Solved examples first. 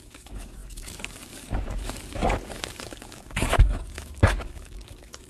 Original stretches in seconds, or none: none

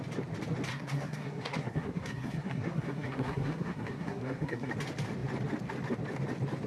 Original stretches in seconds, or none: 0.0-0.7; 4.7-6.7

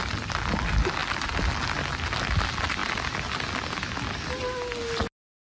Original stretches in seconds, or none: 0.0-5.5

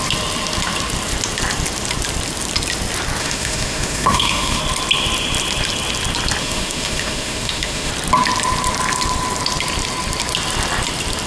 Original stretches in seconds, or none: 0.0-3.2; 4.6-6.4; 7.9-11.3

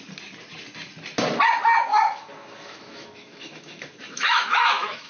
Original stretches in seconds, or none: 0.0-1.9

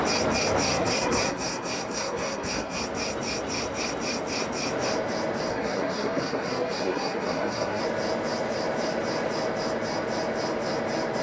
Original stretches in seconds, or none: 0.0-0.7; 2.8-5.5; 7.8-11.2